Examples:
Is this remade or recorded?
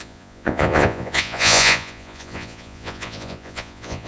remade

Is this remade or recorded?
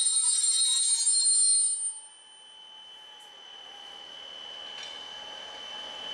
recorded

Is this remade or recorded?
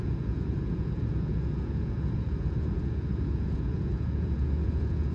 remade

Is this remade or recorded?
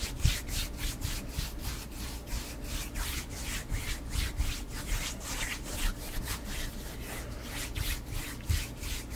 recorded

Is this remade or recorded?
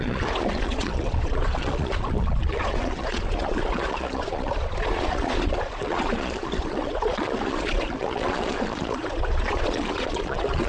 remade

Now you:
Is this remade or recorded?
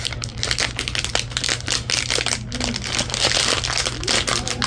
recorded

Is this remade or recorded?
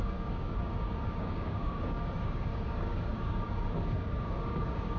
remade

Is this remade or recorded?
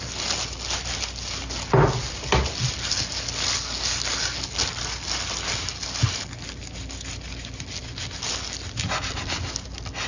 recorded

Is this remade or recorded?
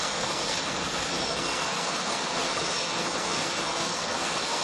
remade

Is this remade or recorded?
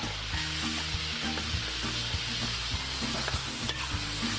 recorded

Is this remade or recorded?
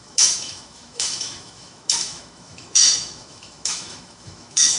remade